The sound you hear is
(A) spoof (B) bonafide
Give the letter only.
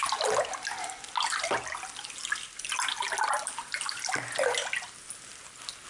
B